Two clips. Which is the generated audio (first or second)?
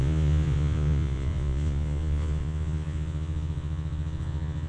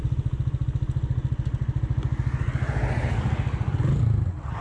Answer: first